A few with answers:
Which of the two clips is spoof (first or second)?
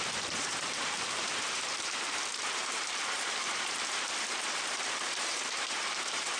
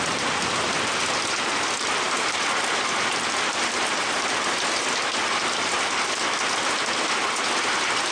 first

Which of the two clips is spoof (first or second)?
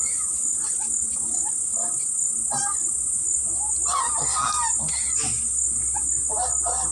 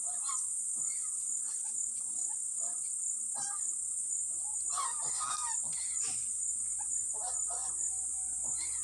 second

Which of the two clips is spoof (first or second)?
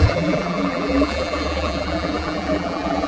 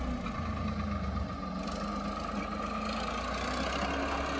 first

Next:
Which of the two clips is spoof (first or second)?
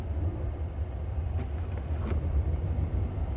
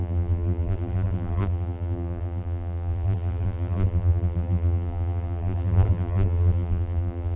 second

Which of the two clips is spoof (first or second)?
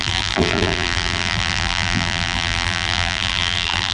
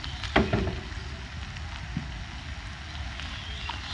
first